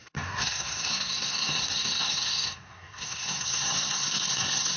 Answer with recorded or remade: remade